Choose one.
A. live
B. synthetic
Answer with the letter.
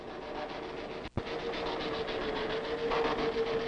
A